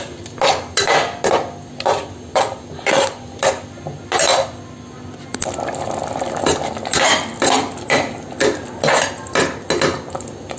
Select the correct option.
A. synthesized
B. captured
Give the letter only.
B